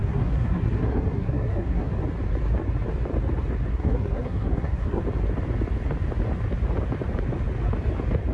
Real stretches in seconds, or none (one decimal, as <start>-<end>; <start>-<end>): 1.9-3.7; 5.0-8.3